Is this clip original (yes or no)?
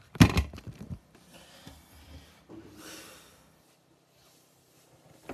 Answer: no